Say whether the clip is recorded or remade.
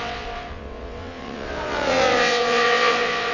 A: remade